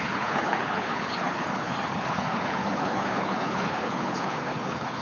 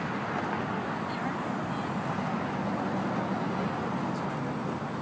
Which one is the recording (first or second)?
second